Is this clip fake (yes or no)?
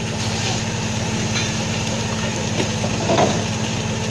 no